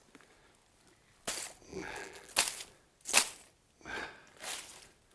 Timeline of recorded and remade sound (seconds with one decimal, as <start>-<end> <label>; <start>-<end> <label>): 0.0-1.7 recorded; 1.7-2.3 remade; 2.3-5.1 recorded